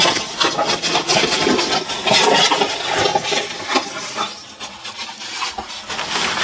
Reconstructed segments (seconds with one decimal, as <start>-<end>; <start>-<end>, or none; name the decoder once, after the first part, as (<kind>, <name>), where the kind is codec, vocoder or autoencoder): none

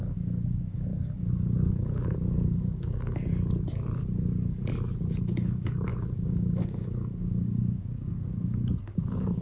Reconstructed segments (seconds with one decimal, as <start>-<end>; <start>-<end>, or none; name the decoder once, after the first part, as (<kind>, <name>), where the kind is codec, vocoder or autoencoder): 0.0-3.3 (codec, DAC); 5.2-9.4

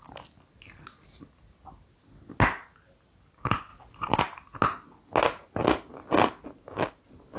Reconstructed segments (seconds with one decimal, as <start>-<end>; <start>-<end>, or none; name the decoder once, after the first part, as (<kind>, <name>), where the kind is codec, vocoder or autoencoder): 3.7-4.2 (vocoder, BigVGAN v2)

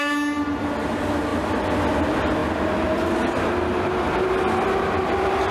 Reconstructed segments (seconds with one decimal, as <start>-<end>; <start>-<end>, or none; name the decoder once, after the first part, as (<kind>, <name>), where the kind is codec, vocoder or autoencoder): none

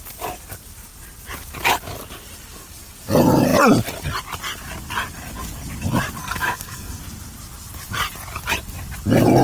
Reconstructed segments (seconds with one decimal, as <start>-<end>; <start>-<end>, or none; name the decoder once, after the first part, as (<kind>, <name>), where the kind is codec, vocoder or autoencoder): 6.2-7.0 (codec, SNAC)

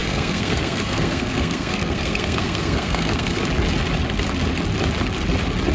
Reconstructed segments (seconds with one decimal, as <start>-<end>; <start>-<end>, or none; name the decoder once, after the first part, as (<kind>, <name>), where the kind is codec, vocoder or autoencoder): 0.0-3.4 (codec, SNAC)

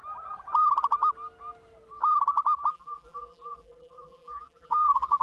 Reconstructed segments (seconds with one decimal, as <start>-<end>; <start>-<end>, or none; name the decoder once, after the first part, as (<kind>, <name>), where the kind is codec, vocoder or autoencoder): 2.7-5.2 (vocoder, BigVGAN v2)